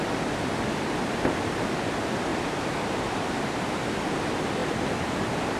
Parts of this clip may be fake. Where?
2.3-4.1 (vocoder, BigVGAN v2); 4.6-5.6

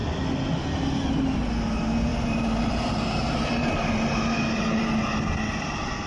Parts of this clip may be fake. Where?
2.1-5.0 (vocoder, BigVGAN v2)

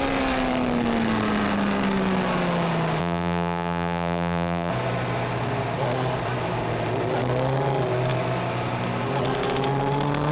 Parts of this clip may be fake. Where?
3.0-4.7 (vocoder, BigVGAN v2)

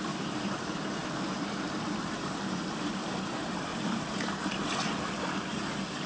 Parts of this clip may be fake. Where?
0.0-3.7 (vocoder, BigVGAN v2); 5.2-6.1

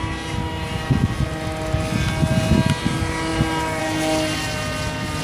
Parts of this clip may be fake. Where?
none

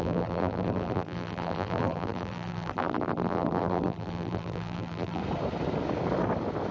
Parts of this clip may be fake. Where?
0.0-5.2 (vocoder, BigVGAN v2)

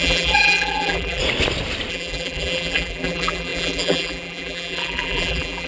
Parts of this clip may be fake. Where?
0.0-1.2 (vocoder, BigVGAN v2); 1.9-5.7